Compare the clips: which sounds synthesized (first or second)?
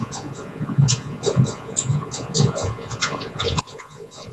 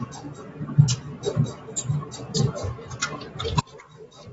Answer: first